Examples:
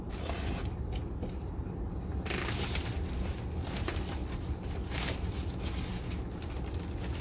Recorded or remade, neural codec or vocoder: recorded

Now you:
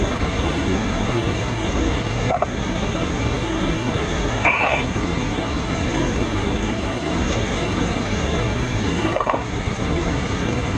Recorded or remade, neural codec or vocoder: remade, codec, SNAC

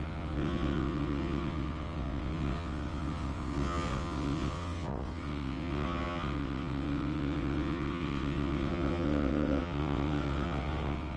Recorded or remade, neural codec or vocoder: remade, vocoder, WaveNeXt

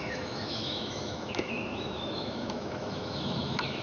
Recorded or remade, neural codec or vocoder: remade, autoencoder, DAC-VAE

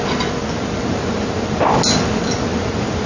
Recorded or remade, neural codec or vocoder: recorded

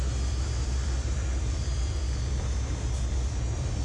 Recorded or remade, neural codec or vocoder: remade, vocoder, BigVGAN v2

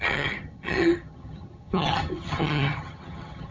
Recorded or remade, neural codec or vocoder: remade, vocoder, HiFi-GAN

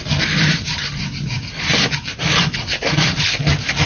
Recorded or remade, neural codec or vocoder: recorded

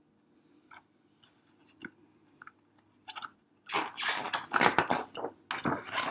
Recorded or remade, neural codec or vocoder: recorded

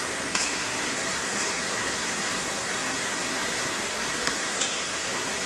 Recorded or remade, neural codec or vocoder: remade, codec, SNAC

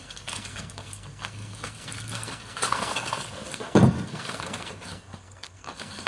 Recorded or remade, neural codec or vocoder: remade, codec, SNAC